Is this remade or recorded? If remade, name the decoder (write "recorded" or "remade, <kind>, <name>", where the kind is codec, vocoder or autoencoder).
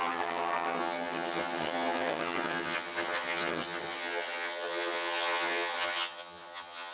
remade, vocoder, HiFi-GAN